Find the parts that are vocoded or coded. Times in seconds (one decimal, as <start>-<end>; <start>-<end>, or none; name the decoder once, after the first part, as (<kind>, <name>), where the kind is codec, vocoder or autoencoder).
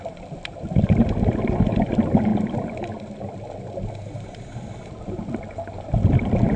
none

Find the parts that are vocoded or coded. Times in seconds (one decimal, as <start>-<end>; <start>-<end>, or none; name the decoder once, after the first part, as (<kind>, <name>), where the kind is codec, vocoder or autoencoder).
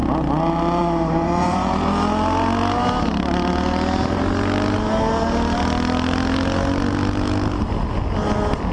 0.8-1.7 (vocoder, Vocos)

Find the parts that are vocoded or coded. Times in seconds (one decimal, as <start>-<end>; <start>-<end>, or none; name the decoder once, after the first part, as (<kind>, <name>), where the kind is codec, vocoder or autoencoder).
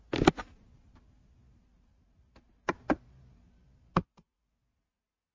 1.9-3.9 (vocoder, BigVGAN v2)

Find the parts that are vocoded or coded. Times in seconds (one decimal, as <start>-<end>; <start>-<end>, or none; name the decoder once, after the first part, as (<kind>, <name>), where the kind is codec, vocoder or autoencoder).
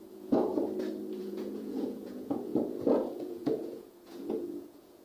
0.0-0.5 (vocoder, Vocos); 1.2-5.0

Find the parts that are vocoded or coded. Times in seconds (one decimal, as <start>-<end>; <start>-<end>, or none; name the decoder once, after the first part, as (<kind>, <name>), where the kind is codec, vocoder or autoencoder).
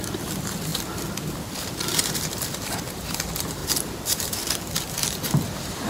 0.0-5.9 (vocoder, BigVGAN v2)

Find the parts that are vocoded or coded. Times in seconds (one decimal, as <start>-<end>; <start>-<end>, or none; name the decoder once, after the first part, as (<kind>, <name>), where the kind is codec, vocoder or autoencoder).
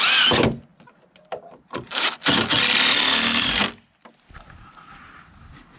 none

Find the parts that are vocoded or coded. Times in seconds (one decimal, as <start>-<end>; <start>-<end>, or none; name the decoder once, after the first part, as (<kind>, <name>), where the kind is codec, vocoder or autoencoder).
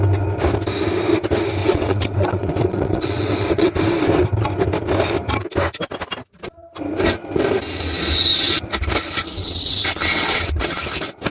1.6-3.8 (vocoder, WaveNeXt); 9.4-10.8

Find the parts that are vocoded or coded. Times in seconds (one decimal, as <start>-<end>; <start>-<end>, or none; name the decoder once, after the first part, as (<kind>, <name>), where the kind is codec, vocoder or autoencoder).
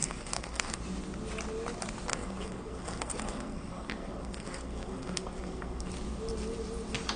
0.0-0.8 (codec, SNAC); 2.1-5.9